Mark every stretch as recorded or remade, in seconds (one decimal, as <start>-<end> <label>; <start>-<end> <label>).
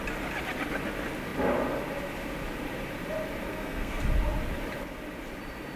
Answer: 0.0-3.5 recorded; 3.5-4.0 remade; 4.0-5.8 recorded